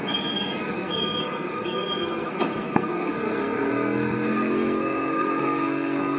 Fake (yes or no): yes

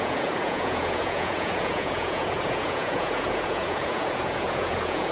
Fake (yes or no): yes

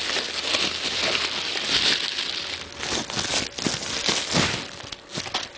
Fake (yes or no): no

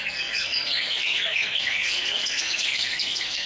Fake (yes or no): yes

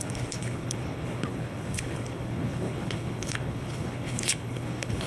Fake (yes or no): yes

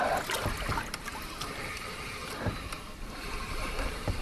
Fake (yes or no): no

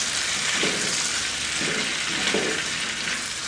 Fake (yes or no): no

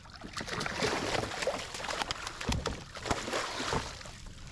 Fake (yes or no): no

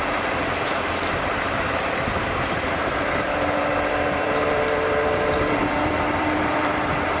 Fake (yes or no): yes